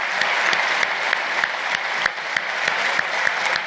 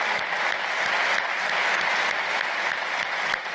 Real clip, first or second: second